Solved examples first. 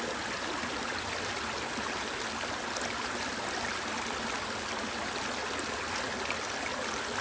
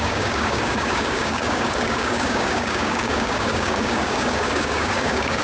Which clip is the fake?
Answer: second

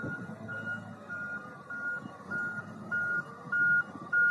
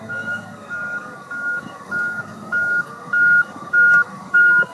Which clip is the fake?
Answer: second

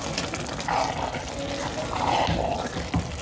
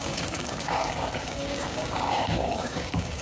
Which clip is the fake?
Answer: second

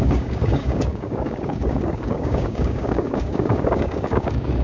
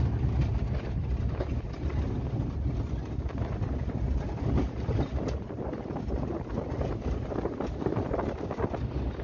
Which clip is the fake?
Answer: first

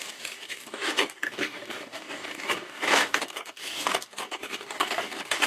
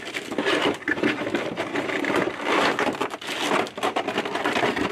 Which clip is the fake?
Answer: first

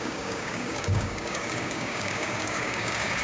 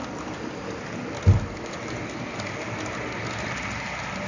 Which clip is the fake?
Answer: first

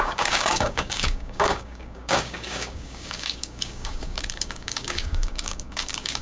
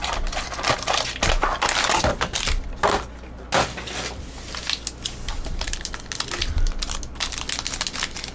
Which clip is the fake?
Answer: first